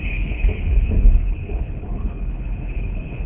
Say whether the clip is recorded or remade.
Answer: remade